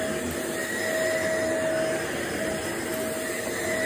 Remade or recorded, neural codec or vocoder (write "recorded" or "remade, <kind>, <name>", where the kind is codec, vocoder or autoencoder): recorded